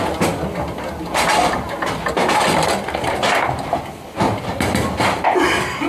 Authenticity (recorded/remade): recorded